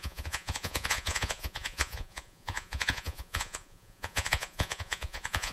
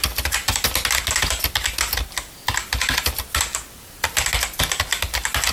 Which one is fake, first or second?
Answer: first